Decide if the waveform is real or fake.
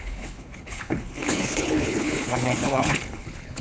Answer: fake